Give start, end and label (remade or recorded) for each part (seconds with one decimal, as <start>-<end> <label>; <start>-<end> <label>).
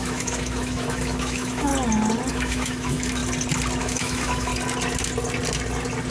0.0-1.7 remade; 1.7-2.3 recorded; 2.3-3.2 remade; 3.2-3.8 recorded; 3.8-4.5 remade; 4.5-6.1 recorded